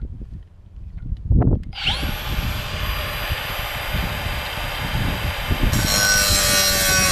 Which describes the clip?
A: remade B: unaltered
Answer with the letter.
B